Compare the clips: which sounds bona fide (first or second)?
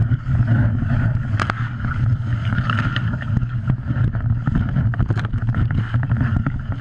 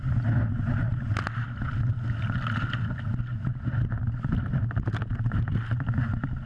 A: second